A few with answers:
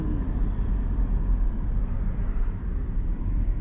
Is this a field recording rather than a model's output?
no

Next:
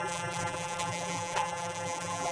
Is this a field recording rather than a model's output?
no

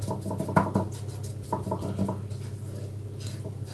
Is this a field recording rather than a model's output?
yes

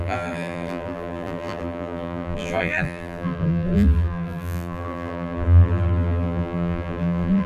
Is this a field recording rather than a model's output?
no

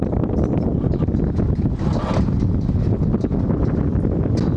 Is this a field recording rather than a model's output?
yes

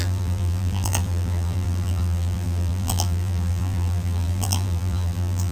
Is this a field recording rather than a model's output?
no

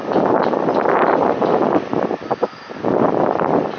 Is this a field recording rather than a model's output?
no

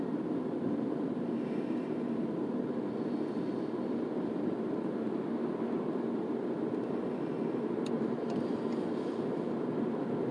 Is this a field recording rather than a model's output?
no